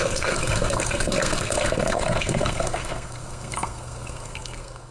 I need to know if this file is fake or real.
fake